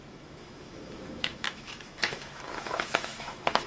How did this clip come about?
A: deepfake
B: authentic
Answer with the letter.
A